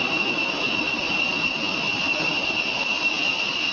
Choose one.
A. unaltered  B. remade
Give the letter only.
A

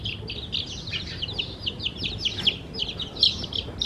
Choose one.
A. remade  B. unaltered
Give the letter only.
B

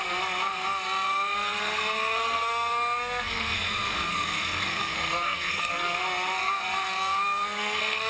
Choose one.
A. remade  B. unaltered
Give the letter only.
A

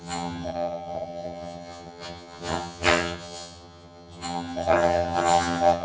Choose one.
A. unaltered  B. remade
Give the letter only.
B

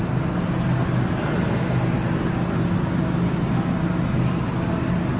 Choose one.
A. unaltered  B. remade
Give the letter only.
A